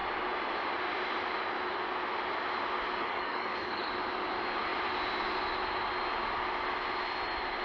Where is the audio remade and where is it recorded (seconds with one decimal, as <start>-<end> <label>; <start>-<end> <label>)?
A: 0.0-3.0 recorded; 3.0-3.9 remade; 3.9-7.6 recorded